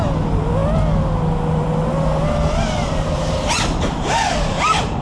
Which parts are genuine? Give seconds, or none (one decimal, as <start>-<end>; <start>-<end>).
0.0-5.0